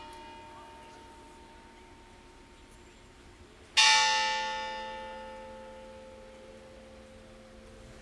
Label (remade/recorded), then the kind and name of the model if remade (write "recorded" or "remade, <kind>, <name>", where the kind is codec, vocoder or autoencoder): recorded